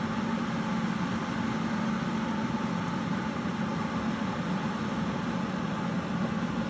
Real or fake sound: real